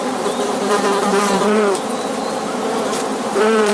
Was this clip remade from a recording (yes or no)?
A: yes